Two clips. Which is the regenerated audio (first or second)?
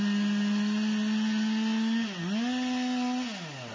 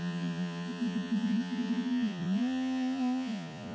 second